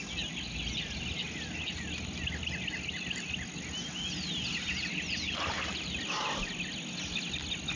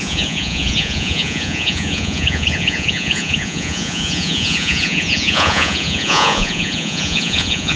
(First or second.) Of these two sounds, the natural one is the first